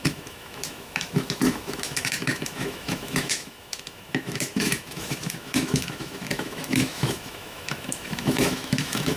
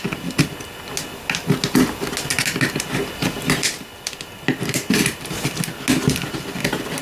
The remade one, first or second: first